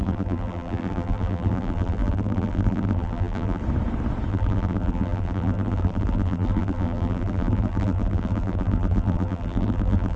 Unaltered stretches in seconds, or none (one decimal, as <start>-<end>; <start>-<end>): 3.6-4.3